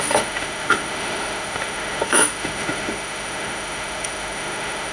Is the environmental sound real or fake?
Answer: fake